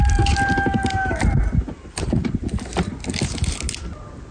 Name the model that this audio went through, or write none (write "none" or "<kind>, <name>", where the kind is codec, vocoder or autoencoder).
none